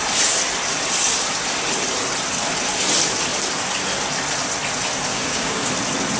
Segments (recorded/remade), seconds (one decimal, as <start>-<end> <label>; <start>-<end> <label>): 0.0-5.1 recorded; 5.1-5.7 remade; 5.7-6.2 recorded